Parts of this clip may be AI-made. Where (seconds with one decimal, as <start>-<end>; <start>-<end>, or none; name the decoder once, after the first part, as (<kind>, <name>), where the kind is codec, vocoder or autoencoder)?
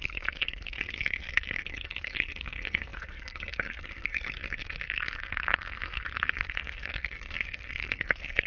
0.0-8.5 (codec, SNAC)